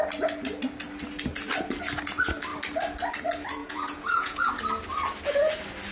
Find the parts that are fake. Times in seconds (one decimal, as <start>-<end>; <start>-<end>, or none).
3.6-4.5